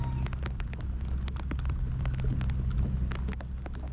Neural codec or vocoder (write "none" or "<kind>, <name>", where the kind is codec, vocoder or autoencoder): none